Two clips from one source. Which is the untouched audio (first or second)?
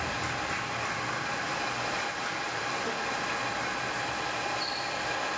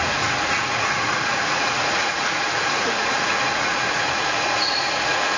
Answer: first